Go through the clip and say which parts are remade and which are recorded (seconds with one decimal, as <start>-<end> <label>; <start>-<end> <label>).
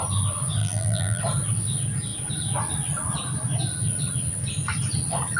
0.0-0.6 recorded; 0.6-1.2 remade; 1.2-5.4 recorded